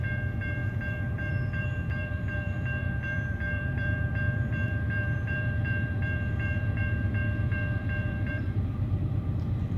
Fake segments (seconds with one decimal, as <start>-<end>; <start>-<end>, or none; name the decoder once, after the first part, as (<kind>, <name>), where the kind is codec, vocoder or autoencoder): 0.0-9.8 (vocoder, BigVGAN v2)